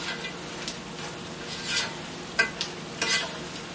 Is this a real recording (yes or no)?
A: yes